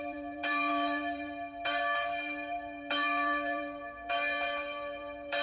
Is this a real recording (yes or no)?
no